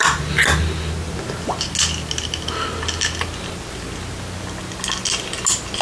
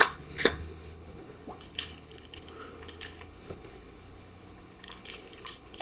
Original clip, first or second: first